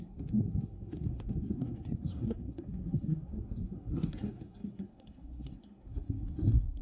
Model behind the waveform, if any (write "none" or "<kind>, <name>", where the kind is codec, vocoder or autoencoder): codec, SNAC